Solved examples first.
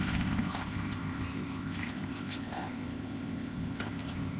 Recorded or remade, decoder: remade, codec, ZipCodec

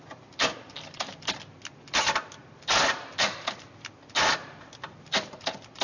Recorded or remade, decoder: recorded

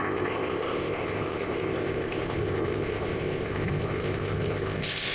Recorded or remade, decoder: remade, codec, ZipCodec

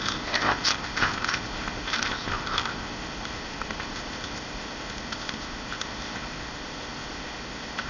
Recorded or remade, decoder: remade, codec, ZipCodec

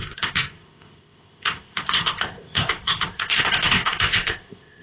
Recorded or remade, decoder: remade, codec, ZipCodec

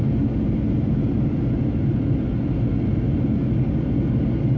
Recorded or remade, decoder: recorded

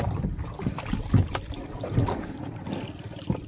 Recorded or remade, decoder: recorded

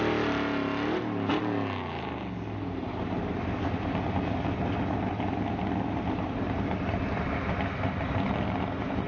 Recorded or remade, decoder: recorded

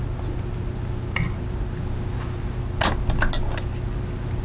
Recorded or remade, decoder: recorded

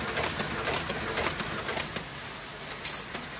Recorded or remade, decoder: recorded